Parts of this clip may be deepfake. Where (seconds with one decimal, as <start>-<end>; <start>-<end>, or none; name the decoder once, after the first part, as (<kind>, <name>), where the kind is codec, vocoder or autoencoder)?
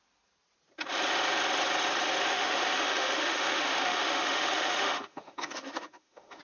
2.3-6.4 (autoencoder, DAC-VAE)